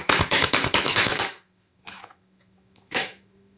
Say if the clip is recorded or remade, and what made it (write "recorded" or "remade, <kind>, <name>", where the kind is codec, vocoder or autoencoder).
remade, autoencoder, DAC-VAE